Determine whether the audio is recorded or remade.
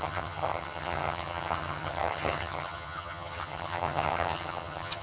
remade